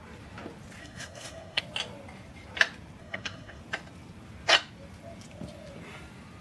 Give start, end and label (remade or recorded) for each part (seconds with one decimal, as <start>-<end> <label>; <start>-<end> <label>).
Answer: 0.0-0.8 recorded; 0.8-1.6 remade; 1.6-3.0 recorded; 3.0-3.6 remade; 3.6-6.4 recorded